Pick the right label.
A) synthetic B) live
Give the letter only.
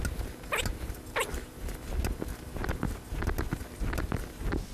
B